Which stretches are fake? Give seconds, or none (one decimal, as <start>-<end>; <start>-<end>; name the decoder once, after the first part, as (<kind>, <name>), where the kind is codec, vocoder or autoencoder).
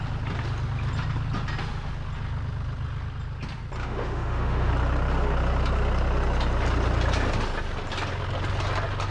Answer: 3.8-4.7 (autoencoder, DAC-VAE)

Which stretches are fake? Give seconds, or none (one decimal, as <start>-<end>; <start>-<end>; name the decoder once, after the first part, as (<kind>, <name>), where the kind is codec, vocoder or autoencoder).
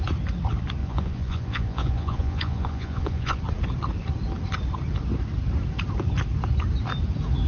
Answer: 0.8-3.4 (vocoder, Vocos)